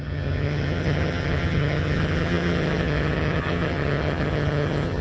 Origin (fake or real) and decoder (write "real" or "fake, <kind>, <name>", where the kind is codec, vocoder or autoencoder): fake, vocoder, HiFi-GAN